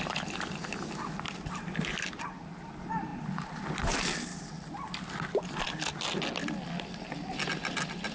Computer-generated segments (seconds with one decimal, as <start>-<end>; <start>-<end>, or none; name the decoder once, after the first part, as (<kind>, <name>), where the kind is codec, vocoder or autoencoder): none

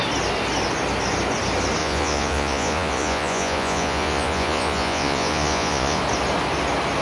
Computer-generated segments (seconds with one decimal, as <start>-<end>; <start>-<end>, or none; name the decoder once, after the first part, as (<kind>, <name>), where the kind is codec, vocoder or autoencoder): 1.8-6.0 (vocoder, Vocos)